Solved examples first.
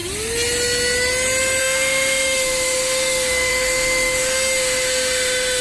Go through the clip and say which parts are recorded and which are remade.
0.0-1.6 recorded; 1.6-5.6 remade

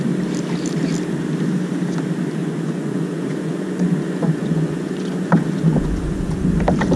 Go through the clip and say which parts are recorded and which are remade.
0.0-2.4 recorded; 2.4-6.5 remade; 6.5-7.0 recorded

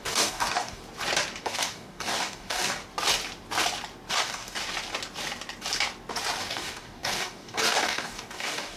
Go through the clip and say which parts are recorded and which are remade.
0.0-0.8 remade; 0.8-1.4 recorded; 1.4-2.8 remade; 2.8-4.1 recorded; 4.1-4.6 remade; 4.6-6.4 recorded; 6.4-8.8 remade

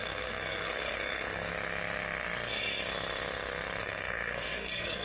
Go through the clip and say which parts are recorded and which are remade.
0.0-1.5 remade; 1.5-3.8 recorded; 3.8-5.0 remade

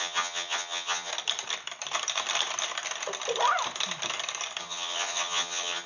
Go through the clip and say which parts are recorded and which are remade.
0.0-1.1 remade; 1.1-4.6 recorded; 4.6-5.9 remade

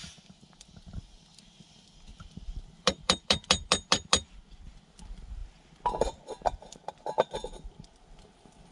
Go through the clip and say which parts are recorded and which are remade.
0.0-1.0 remade; 1.0-2.1 recorded; 2.1-4.8 remade; 4.8-5.4 recorded; 5.4-6.9 remade; 6.9-8.7 recorded

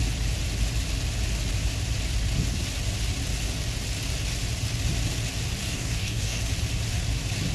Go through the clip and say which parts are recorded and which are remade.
0.0-5.6 recorded; 5.6-6.4 remade; 6.4-7.5 recorded

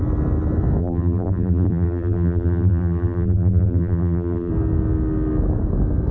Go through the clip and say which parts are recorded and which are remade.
0.0-0.8 recorded; 0.8-4.5 remade; 4.5-6.1 recorded